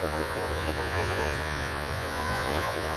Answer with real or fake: fake